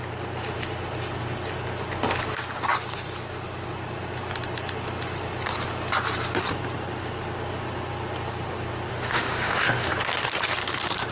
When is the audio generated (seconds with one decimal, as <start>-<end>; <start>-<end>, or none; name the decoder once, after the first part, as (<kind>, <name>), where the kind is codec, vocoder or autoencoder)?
8.9-9.9 (autoencoder, DAC-VAE)